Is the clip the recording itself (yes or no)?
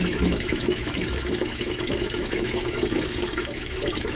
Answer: no